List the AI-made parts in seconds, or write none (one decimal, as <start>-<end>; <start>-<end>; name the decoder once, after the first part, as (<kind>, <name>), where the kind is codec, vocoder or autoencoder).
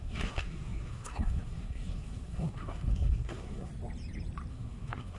0.0-3.7 (codec, SNAC); 4.5-5.2